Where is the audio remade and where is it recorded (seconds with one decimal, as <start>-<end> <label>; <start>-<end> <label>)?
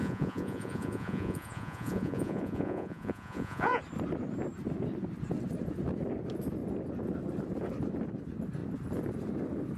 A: 0.0-3.8 remade; 3.8-9.8 recorded